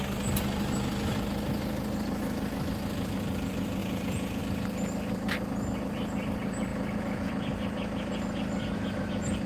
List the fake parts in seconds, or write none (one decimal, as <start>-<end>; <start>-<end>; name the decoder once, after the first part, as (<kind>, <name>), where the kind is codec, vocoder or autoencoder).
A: 3.8-4.4 (vocoder, Vocos); 6.7-7.3

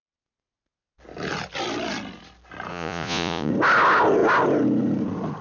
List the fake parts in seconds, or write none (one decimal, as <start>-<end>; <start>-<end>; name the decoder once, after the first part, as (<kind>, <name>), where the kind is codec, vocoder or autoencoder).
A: 2.7-3.5 (vocoder, Vocos)

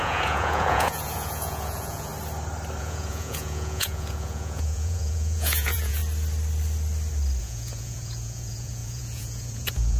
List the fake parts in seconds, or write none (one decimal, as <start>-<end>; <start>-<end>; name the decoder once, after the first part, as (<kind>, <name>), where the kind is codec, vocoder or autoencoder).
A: 0.0-2.1 (vocoder, Vocos); 2.8-6.0; 7.4-10.0

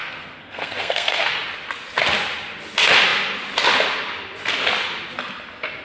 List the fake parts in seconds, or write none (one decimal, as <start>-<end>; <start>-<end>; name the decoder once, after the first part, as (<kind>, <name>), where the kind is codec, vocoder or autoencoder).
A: 0.0-1.3 (codec, SNAC)

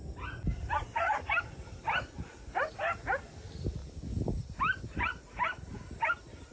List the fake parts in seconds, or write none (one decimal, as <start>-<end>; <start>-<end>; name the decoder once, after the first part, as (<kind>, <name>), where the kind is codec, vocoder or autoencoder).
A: none

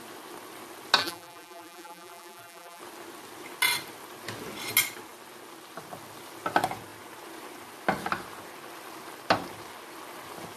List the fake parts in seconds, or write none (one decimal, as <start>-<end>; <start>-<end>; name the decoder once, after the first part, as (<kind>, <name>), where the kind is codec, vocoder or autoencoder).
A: 1.0-2.8 (vocoder, BigVGAN v2)

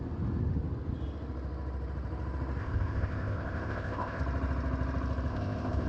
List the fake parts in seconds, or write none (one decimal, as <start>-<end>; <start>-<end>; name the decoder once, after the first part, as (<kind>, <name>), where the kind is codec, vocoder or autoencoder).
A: 2.6-4.2 (codec, ZipCodec); 5.3-5.9

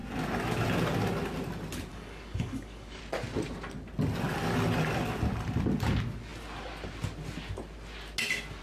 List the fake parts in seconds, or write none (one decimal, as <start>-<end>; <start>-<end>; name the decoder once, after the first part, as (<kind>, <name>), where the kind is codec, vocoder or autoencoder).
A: 1.9-3.0 (codec, DAC)